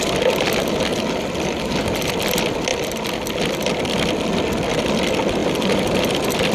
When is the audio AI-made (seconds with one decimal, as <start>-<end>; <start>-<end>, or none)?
0.9-2.1; 5.4-6.5